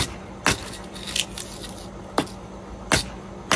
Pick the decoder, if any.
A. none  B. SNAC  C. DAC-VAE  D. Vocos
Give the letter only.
A